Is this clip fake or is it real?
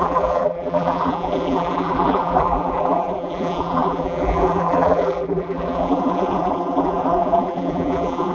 fake